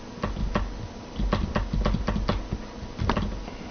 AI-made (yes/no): no